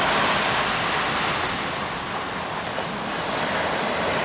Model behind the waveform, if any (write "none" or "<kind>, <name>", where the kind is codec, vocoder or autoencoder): none